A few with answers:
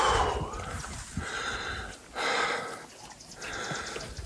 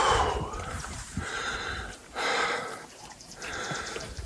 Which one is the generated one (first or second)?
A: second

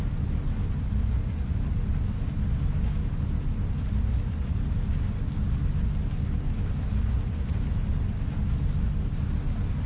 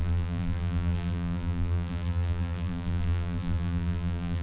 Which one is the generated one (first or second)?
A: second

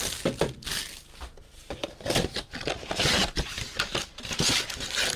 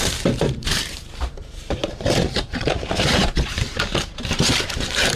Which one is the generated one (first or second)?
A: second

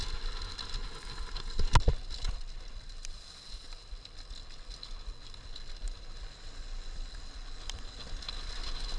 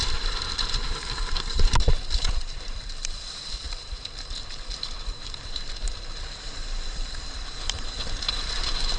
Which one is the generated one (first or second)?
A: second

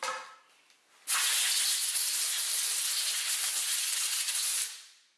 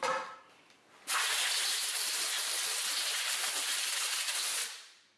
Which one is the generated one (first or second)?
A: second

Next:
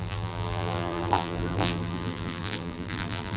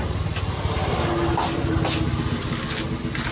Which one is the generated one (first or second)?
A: first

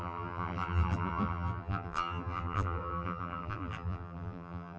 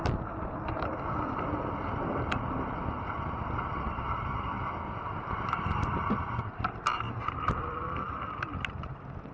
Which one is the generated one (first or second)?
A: first